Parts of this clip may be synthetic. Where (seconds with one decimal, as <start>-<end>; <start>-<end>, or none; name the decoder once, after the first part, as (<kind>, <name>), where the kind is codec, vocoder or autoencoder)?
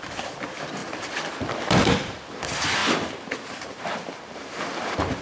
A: 0.8-2.4 (vocoder, BigVGAN v2); 2.8-5.2